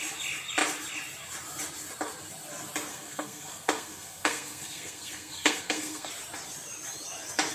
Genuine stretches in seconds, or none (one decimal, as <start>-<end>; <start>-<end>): 0.0-2.9; 6.1-7.5